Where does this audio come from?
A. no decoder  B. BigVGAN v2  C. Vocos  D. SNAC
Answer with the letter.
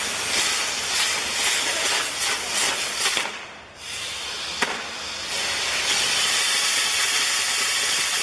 A